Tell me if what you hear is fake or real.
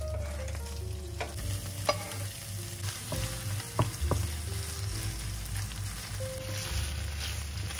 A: real